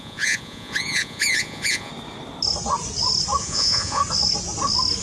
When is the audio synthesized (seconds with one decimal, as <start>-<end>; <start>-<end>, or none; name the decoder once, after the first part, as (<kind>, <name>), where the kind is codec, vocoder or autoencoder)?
0.0-1.9 (vocoder, Vocos); 3.4-4.0